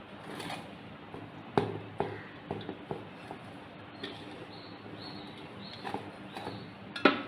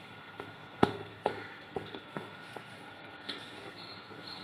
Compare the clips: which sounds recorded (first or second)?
first